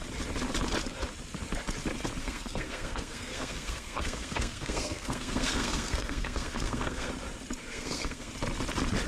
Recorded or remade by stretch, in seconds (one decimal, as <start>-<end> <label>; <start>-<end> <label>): 0.0-2.2 recorded; 2.2-7.1 remade; 7.1-7.6 recorded; 7.6-8.3 remade; 8.3-9.1 recorded